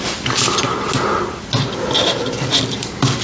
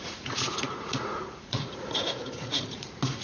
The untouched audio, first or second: first